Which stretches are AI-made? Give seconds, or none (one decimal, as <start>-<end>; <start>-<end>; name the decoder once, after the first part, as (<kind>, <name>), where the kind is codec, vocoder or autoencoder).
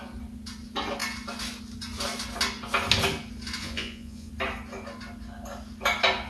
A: 3.6-4.3 (vocoder, Vocos)